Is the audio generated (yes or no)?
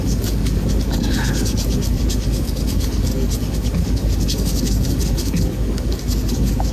yes